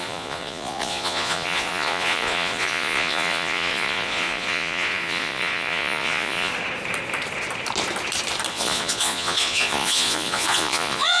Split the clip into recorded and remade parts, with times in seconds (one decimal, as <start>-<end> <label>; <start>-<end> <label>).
0.0-6.5 remade; 6.5-8.5 recorded; 8.5-11.2 remade